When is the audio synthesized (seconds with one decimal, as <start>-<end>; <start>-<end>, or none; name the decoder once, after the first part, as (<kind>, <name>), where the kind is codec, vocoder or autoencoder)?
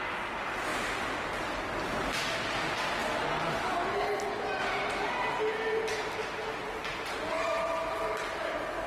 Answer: 6.6-7.9 (vocoder, BigVGAN v2)